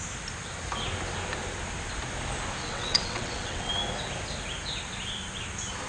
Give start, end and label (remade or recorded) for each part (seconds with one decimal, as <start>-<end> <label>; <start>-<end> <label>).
0.0-2.6 recorded; 2.6-3.7 remade; 3.7-5.9 recorded